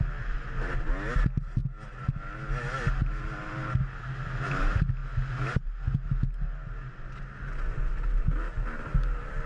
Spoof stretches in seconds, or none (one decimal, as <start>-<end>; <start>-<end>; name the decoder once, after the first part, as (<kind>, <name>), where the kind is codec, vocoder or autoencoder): none